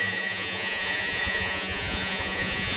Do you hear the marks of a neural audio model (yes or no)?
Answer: yes